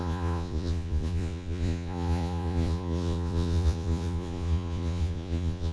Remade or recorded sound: remade